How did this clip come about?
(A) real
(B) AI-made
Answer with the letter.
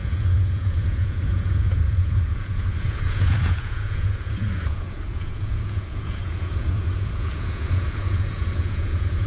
B